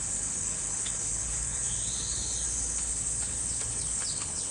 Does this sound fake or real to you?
fake